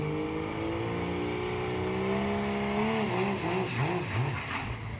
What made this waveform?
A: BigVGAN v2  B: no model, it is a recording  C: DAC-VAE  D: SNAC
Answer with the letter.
B